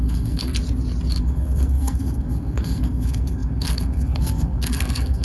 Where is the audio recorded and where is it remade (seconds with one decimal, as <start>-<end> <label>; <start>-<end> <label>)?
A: 0.0-0.5 remade; 0.5-1.2 recorded; 1.2-5.2 remade